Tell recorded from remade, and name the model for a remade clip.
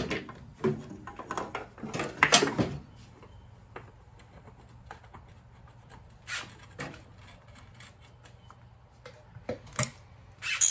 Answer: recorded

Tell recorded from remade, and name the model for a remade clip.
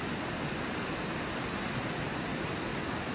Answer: recorded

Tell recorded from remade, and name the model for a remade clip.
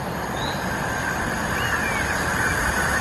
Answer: recorded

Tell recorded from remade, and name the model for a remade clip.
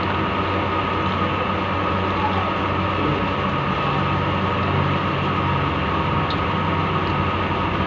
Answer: recorded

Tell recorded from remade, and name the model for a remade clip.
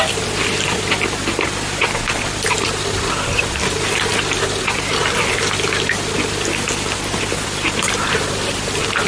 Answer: recorded